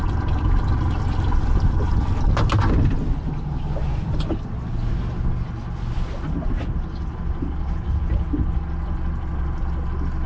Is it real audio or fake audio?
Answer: real